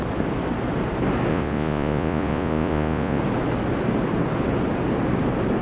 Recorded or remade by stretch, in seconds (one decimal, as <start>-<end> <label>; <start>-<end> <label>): 0.0-1.3 recorded; 1.3-3.2 remade; 3.2-5.6 recorded